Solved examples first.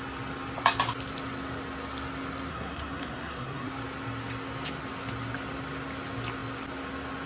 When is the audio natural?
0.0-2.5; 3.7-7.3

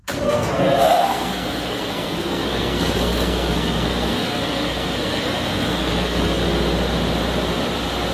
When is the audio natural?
6.4-8.1

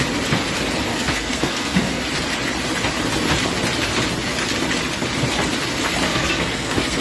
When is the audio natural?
0.0-0.9; 2.0-6.1

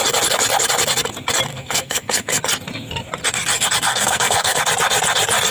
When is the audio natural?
0.0-1.5; 2.4-3.9; 4.6-5.5

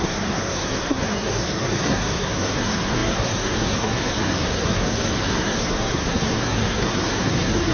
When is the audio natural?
none

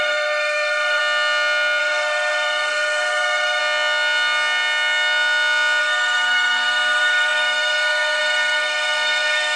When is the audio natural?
1.0-1.8; 3.6-5.8

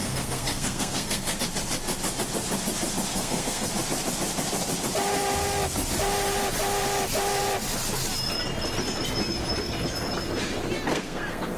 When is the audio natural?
1.4-3.1; 3.7-10.9

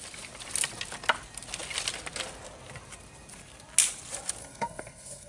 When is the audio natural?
0.0-4.4